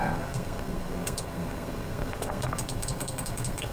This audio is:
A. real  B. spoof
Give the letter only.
B